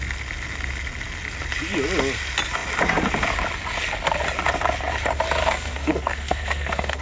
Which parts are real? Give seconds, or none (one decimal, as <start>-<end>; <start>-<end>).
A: 0.0-5.4